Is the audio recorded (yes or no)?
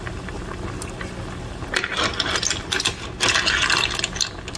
yes